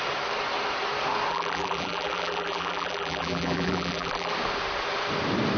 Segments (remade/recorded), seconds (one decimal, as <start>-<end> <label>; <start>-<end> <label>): 0.0-1.3 recorded; 1.3-4.3 remade; 4.3-5.6 recorded